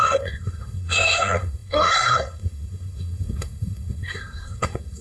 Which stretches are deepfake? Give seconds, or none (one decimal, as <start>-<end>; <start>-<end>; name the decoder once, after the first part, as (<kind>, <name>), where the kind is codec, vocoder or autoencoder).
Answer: 0.0-5.0 (codec, SNAC)